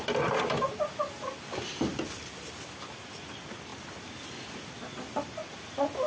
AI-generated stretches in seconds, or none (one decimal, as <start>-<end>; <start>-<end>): none